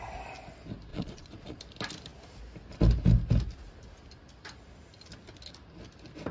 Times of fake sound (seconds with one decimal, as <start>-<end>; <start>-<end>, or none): 0.9-1.6